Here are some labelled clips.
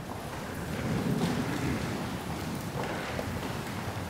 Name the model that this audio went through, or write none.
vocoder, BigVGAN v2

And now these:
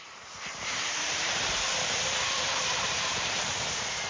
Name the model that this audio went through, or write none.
vocoder, BigVGAN v2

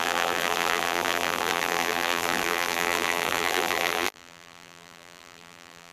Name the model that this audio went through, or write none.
vocoder, BigVGAN v2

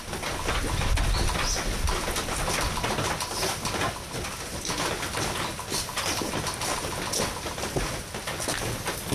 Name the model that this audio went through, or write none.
none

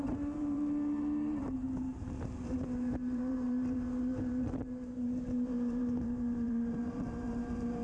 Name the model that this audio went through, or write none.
vocoder, BigVGAN v2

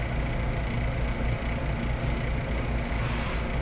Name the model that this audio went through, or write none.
none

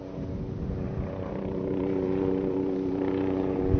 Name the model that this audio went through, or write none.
vocoder, BigVGAN v2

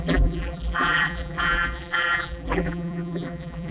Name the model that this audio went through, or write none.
vocoder, BigVGAN v2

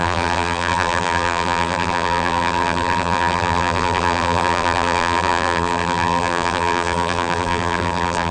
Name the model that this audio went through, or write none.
vocoder, BigVGAN v2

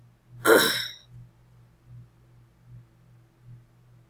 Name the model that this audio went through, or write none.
none